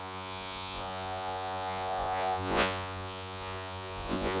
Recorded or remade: remade